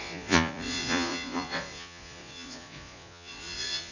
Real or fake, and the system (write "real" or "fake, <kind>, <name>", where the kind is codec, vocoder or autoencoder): fake, vocoder, Vocos